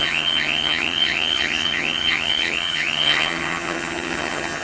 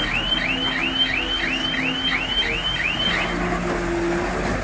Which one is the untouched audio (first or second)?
second